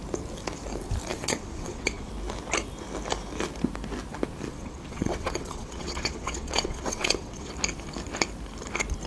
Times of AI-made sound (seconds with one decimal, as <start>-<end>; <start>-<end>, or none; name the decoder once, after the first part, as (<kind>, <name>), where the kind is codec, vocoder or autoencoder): 1.1-2.1 (vocoder, WaveNeXt); 4.5-7.5